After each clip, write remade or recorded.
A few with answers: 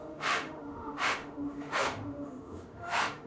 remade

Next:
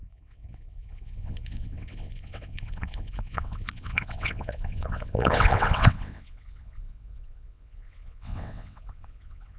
remade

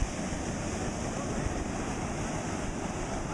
recorded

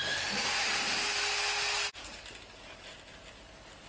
recorded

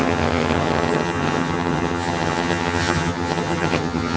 remade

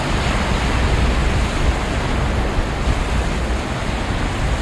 recorded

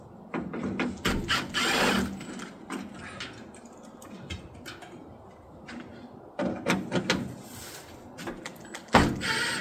recorded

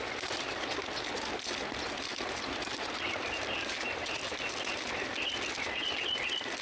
recorded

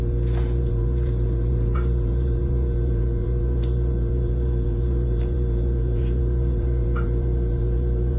remade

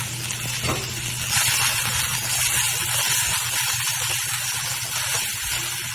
recorded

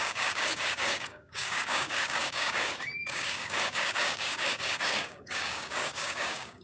remade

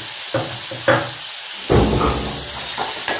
recorded